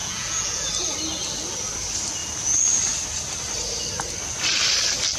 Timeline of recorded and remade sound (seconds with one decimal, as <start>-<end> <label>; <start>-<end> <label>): 0.0-0.7 remade; 0.7-5.2 recorded